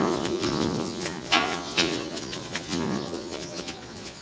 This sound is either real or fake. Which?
fake